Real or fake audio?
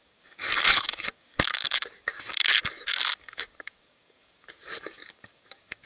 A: fake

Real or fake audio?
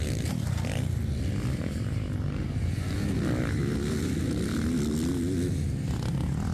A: real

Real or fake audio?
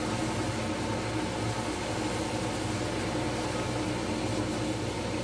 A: real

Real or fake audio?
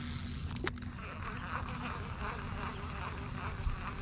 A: real